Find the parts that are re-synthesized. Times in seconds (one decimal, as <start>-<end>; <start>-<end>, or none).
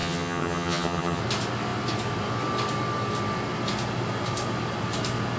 0.0-1.2